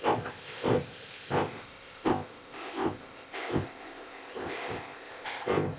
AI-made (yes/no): yes